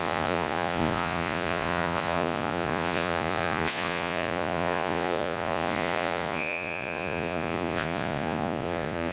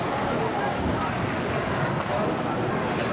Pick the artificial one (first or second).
first